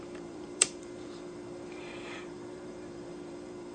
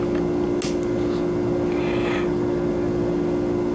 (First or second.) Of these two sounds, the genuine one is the second